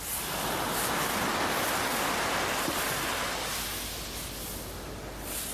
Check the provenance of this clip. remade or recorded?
recorded